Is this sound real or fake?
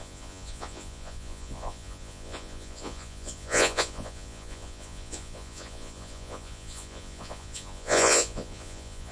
fake